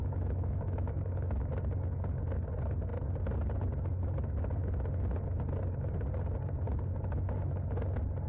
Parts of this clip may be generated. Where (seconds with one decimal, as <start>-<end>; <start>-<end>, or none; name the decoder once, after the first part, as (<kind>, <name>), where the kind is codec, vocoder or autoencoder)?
0.0-1.5 (autoencoder, DAC-VAE)